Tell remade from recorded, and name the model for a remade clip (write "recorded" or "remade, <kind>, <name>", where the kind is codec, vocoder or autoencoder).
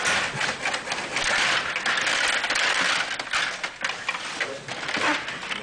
recorded